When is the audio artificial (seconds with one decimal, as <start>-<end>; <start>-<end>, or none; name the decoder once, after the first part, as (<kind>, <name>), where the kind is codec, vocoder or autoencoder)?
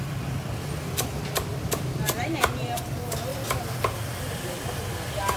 1.5-2.2 (vocoder, BigVGAN v2)